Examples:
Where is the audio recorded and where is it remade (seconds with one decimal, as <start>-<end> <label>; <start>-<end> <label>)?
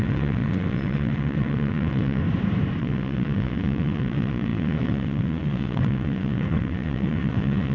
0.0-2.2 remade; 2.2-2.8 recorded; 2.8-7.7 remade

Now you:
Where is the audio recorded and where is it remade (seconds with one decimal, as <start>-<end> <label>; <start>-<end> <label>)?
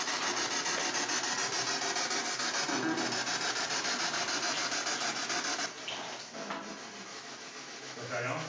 0.0-7.1 recorded; 7.1-8.1 remade; 8.1-8.5 recorded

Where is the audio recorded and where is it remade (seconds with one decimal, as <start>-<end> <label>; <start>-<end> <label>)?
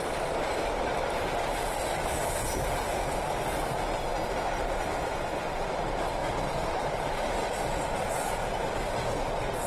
0.0-9.7 recorded